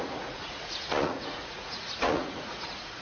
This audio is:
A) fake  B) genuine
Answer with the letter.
A